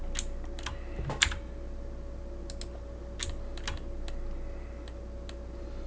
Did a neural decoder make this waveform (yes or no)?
no